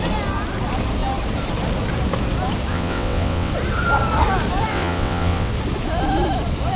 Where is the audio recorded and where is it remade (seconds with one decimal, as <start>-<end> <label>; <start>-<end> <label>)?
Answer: 0.0-2.7 recorded; 2.7-3.5 remade; 3.5-4.7 recorded; 4.7-5.5 remade; 5.5-6.8 recorded